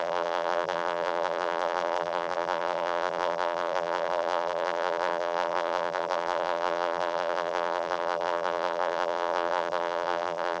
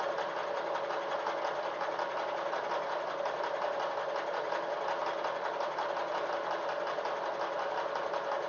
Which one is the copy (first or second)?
first